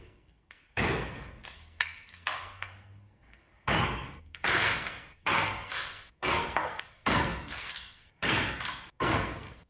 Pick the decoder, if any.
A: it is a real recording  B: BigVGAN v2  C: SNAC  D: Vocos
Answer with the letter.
C